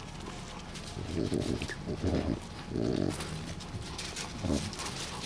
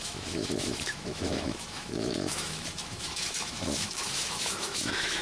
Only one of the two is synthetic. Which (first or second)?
second